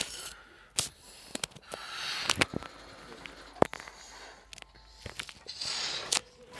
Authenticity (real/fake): real